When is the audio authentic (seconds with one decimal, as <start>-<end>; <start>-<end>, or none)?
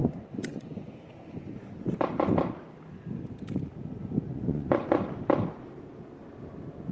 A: 0.9-4.3; 5.2-6.9